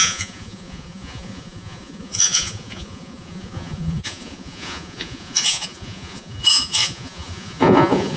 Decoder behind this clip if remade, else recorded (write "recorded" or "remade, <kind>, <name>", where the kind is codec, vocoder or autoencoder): remade, vocoder, Vocos